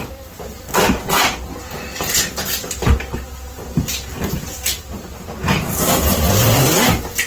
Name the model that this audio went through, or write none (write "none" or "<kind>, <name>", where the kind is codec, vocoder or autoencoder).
none